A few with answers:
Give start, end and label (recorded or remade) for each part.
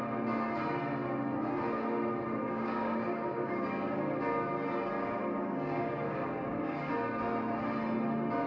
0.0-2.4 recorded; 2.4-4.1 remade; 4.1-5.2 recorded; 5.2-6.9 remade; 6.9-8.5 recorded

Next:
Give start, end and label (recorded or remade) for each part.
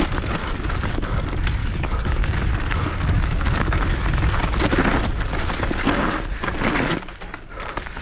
0.0-0.4 recorded; 0.4-1.2 remade; 1.2-1.6 recorded; 1.6-4.3 remade; 4.3-8.0 recorded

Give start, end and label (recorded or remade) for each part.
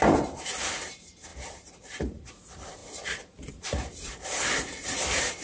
0.0-5.4 remade